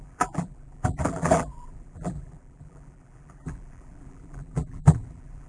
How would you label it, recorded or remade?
remade